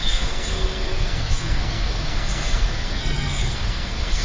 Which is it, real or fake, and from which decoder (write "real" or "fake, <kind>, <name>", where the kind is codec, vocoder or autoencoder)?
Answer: fake, codec, SNAC